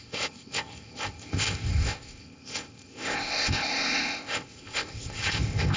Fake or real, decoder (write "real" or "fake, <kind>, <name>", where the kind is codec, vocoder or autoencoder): fake, codec, ZipCodec